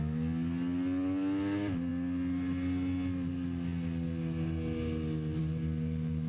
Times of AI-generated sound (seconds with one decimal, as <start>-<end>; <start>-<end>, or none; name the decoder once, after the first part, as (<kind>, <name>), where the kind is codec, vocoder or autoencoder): none